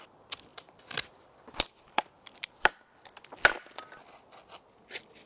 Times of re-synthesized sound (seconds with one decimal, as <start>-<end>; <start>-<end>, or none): 0.5-3.7